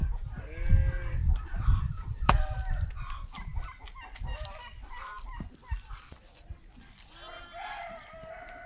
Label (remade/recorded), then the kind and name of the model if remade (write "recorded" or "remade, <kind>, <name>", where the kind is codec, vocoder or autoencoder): recorded